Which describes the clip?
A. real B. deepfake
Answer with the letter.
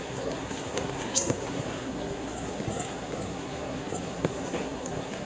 B